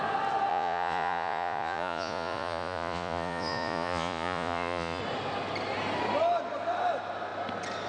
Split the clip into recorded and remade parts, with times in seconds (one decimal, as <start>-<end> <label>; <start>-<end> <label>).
0.0-0.5 recorded; 0.5-5.0 remade; 5.0-7.9 recorded